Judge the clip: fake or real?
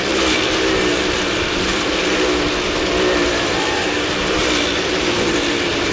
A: real